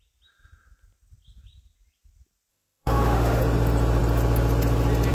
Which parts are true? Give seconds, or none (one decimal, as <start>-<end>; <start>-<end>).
0.0-2.5; 3.4-5.1